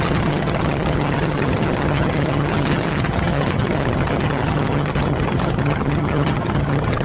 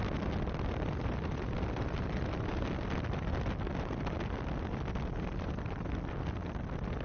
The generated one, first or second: first